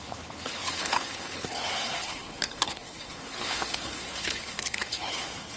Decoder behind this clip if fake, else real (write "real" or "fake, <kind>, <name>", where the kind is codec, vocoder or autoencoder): fake, codec, HILCodec